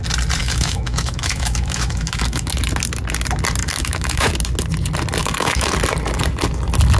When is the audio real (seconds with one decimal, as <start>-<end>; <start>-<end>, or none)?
0.0-0.4; 2.5-3.6; 4.3-5.2; 5.7-7.0